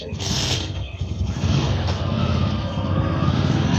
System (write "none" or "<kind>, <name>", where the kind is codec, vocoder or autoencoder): codec, SNAC